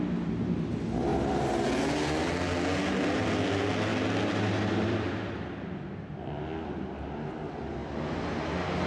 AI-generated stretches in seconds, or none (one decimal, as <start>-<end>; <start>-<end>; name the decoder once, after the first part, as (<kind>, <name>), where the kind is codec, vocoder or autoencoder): none